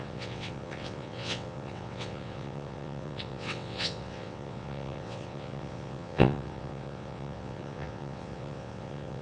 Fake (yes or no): yes